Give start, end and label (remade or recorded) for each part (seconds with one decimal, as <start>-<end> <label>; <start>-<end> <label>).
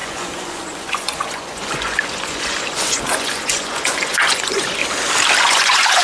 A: 0.0-4.8 remade; 4.8-5.4 recorded; 5.4-6.0 remade